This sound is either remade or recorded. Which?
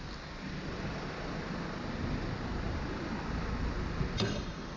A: recorded